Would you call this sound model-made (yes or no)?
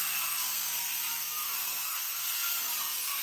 yes